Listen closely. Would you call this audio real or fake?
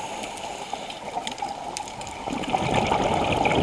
real